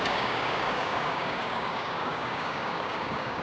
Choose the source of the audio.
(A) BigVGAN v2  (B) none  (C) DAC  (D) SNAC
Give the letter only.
C